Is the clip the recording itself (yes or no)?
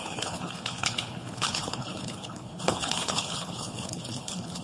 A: no